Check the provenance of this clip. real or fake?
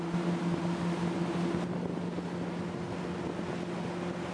real